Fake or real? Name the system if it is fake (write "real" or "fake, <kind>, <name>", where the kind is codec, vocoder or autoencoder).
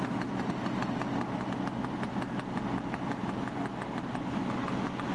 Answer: real